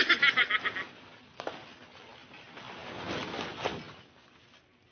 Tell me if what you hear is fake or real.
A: real